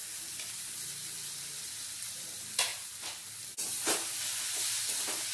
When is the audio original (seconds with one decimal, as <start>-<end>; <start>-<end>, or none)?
0.0-5.3